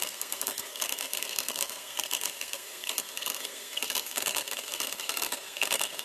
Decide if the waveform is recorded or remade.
remade